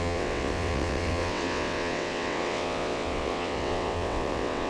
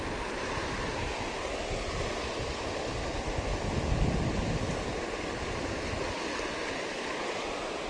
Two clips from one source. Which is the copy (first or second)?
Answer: first